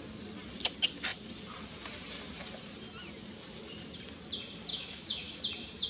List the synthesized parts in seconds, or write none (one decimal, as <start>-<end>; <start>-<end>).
4.7-5.4